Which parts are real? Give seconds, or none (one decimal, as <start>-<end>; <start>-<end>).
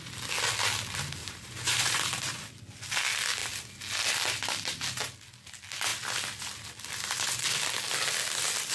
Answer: 0.0-1.2; 2.4-8.7